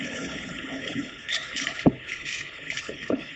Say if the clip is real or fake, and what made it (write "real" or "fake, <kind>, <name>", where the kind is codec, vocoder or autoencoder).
fake, codec, HILCodec